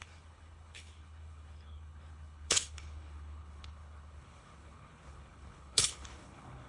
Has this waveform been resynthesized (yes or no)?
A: yes